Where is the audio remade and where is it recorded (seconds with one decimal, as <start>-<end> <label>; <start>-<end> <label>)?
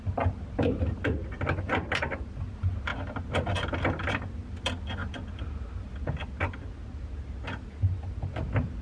0.0-2.9 remade; 2.9-4.1 recorded; 4.1-5.0 remade; 5.0-7.4 recorded; 7.4-8.8 remade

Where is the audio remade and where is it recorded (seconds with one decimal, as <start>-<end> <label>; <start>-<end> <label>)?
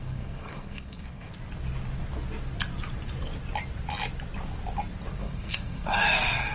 0.0-1.3 remade; 1.3-5.2 recorded; 5.2-6.5 remade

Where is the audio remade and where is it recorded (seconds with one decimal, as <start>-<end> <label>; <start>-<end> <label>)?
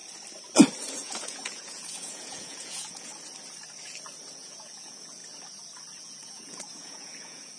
0.0-0.9 recorded; 0.9-3.1 remade; 3.1-4.3 recorded; 4.3-5.2 remade; 5.2-6.0 recorded; 6.0-7.6 remade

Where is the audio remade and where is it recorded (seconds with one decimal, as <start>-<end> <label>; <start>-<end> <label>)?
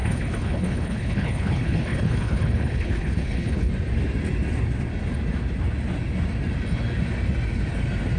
0.0-3.7 remade; 3.7-8.2 recorded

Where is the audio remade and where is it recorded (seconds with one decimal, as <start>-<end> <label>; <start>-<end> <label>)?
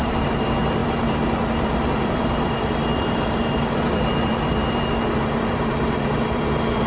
0.0-6.9 remade